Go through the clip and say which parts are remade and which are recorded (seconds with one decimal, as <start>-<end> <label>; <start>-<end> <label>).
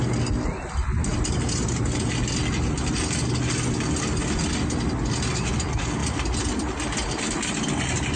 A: 0.0-1.1 recorded; 1.1-2.1 remade; 2.1-8.2 recorded